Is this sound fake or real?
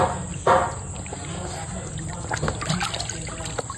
real